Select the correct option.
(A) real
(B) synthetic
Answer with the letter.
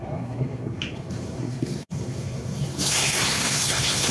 B